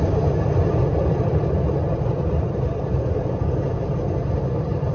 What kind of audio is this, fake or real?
fake